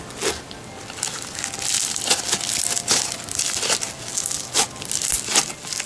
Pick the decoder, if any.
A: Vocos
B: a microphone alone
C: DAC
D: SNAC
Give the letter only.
B